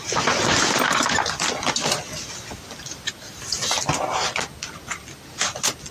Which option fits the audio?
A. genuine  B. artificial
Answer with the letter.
A